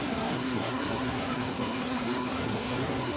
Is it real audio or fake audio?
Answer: fake